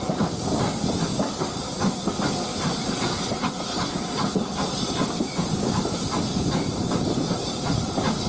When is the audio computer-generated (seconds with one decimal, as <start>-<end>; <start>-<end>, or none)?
none